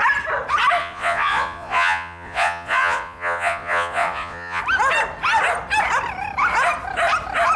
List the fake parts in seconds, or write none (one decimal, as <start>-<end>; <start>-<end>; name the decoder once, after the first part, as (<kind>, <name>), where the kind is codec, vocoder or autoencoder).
0.8-4.6 (vocoder, Vocos)